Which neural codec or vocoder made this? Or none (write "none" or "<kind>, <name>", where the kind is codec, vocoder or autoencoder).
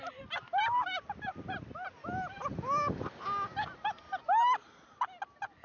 none